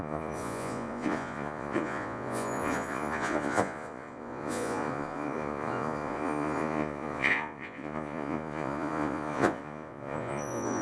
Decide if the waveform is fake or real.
fake